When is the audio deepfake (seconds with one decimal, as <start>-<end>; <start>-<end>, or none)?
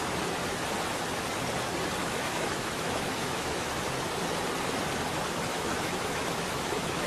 2.0-3.7; 5.5-7.1